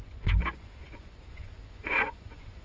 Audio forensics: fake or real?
fake